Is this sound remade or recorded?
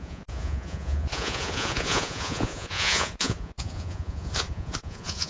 remade